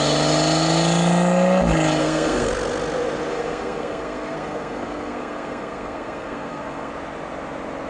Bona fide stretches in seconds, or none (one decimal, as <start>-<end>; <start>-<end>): 0.0-2.0; 2.5-3.3; 6.9-7.9